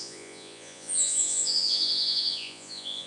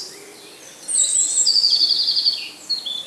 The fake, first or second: first